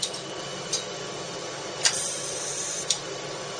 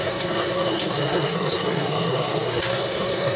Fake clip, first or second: second